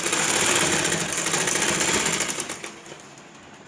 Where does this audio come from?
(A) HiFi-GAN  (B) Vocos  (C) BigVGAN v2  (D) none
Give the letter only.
D